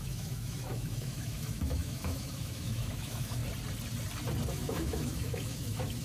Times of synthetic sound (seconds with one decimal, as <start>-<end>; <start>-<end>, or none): 0.0-3.4; 4.5-6.0